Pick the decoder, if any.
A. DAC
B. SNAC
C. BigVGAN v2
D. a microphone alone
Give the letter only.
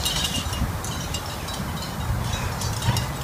C